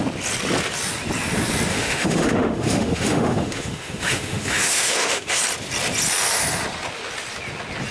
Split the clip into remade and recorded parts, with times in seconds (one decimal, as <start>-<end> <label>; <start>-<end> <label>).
0.0-1.7 recorded; 1.7-5.4 remade; 5.4-7.9 recorded